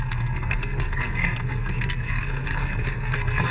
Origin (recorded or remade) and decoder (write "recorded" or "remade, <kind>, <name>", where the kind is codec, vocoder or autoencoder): remade, codec, SNAC